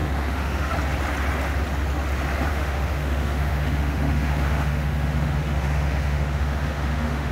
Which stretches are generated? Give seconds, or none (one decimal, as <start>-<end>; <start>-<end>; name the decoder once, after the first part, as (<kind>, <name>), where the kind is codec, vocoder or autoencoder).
0.0-0.7 (autoencoder, DAC-VAE); 2.5-7.3